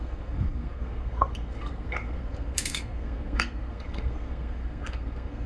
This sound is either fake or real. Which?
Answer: fake